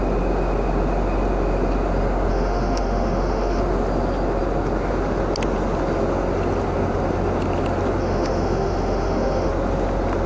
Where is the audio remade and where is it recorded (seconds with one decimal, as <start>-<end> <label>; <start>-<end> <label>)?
0.0-2.3 recorded; 2.3-3.6 remade; 3.6-8.0 recorded; 8.0-9.5 remade; 9.5-10.3 recorded